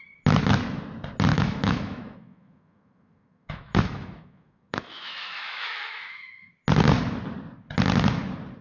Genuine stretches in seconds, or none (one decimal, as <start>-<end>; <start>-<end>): 0.0-1.3; 6.5-8.6